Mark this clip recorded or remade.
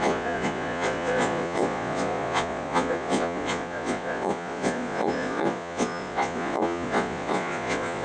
remade